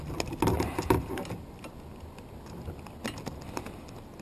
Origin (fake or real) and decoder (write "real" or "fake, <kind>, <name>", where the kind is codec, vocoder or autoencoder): real